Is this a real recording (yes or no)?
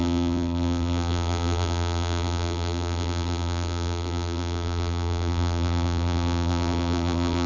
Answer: no